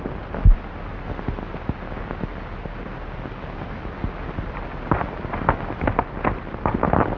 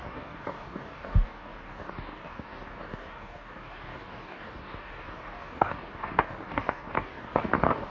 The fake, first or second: second